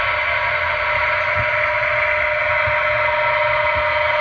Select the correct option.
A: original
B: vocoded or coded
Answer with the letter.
A